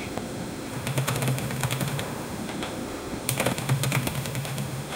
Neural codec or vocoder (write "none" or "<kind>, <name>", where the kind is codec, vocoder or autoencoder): autoencoder, DAC-VAE